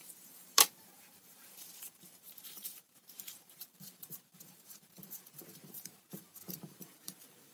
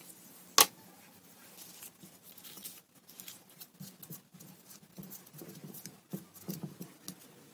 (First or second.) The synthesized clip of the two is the first